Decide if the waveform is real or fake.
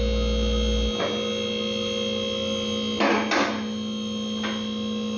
real